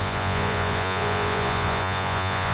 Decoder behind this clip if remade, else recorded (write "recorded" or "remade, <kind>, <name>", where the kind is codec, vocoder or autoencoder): remade, vocoder, Vocos